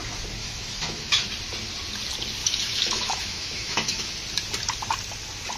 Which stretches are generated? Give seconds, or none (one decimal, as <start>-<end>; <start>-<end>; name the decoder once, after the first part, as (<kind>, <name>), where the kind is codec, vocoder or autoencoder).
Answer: 0.4-1.2 (autoencoder, DAC-VAE); 2.4-4.1